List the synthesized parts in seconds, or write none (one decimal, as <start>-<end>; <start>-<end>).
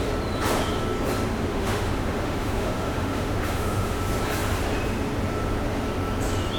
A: 1.5-4.0